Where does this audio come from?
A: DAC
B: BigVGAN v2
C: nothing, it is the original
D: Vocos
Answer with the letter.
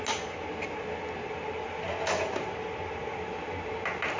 C